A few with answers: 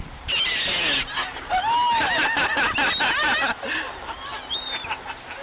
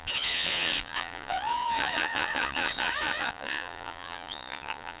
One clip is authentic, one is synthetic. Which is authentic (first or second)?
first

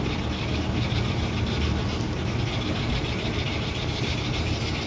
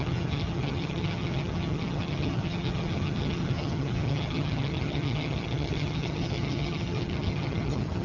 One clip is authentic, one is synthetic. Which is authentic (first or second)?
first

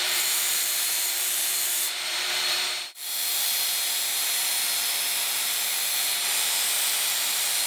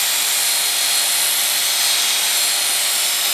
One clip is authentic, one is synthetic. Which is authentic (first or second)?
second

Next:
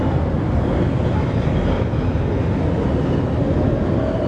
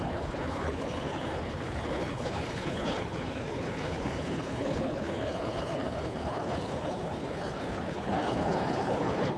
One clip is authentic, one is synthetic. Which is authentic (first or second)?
first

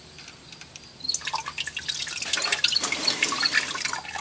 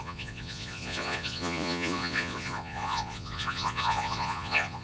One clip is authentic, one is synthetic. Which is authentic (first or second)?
first